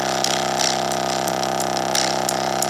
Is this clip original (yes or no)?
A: yes